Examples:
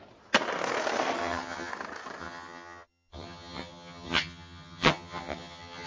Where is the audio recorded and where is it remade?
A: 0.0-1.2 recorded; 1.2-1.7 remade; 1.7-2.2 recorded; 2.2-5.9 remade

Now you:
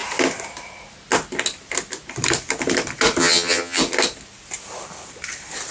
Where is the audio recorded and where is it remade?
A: 0.0-3.2 recorded; 3.2-3.8 remade; 3.8-5.7 recorded

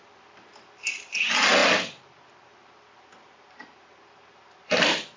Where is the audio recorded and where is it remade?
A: 0.0-5.2 recorded